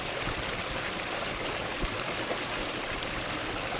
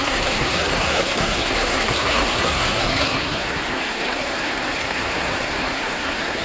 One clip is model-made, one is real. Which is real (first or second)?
first